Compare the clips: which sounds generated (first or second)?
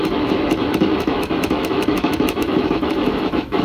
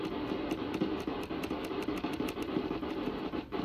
first